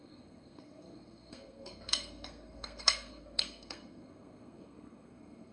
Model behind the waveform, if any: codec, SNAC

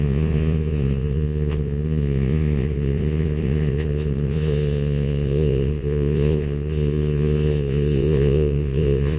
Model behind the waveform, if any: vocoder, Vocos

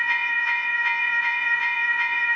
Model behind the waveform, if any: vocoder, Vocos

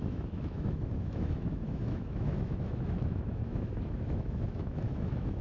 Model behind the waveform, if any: autoencoder, DAC-VAE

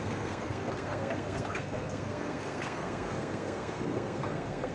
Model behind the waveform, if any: codec, SNAC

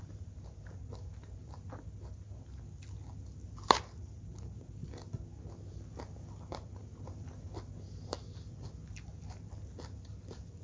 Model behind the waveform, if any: none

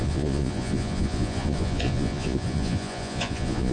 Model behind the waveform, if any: vocoder, Vocos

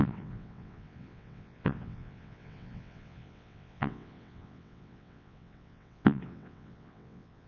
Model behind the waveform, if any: vocoder, WaveNeXt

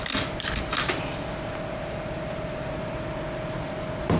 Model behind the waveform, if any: none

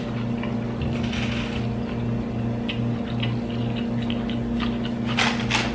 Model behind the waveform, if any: none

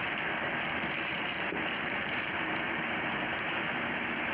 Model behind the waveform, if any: vocoder, BigVGAN v2